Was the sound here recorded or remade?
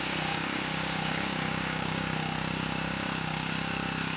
remade